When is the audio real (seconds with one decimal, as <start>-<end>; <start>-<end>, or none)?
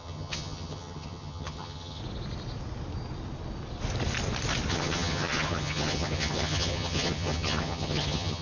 2.0-4.7